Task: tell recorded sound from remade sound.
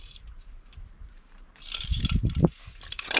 remade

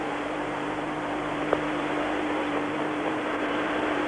remade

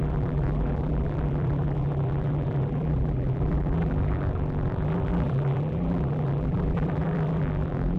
remade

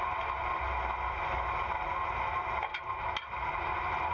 recorded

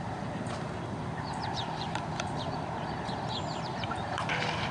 remade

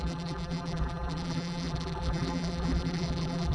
remade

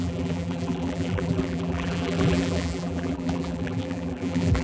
remade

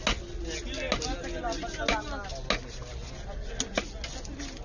recorded